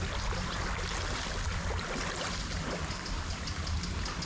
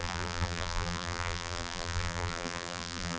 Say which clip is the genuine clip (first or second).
first